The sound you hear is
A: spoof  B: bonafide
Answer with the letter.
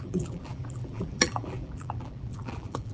A